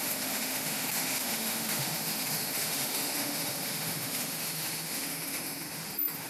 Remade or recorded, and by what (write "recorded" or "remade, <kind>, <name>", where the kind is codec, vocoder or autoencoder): remade, autoencoder, DAC-VAE